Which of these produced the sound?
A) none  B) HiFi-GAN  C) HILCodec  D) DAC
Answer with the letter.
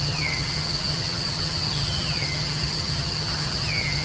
B